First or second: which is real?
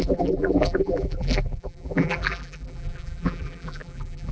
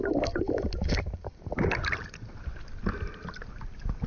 second